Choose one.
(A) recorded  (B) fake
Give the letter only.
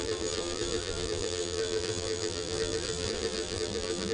B